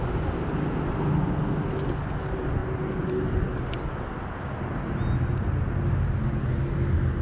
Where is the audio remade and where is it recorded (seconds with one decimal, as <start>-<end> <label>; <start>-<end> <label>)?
0.0-7.2 recorded